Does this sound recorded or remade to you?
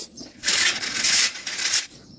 remade